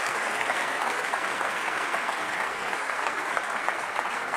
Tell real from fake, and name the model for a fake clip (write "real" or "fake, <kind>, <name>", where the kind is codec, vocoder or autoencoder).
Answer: fake, codec, SNAC